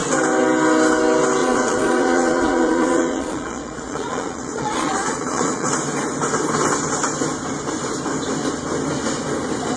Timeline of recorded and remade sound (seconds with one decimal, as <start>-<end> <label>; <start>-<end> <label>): 0.0-1.4 recorded; 1.4-5.7 remade; 5.7-9.8 recorded